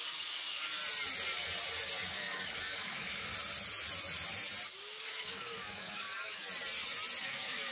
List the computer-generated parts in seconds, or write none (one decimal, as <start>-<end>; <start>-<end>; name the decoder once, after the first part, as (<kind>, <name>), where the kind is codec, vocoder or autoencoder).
0.0-0.8 (codec, DAC); 2.1-3.3; 5.0-6.4; 7.2-7.7